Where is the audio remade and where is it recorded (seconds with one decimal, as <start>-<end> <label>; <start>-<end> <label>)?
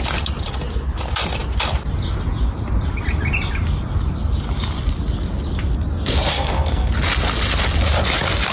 0.0-6.3 recorded; 6.3-6.9 remade; 6.9-8.5 recorded